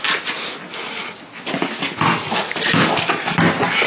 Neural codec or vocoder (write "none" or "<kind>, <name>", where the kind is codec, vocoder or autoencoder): none